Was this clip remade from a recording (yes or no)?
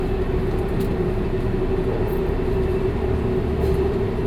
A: no